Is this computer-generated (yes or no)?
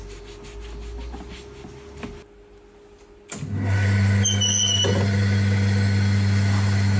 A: no